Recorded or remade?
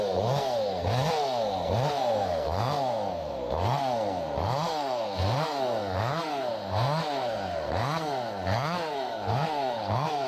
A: remade